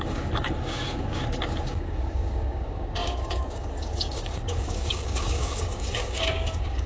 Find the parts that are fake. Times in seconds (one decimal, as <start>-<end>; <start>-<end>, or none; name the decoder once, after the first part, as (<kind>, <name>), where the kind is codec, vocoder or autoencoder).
0.0-6.9 (codec, DAC)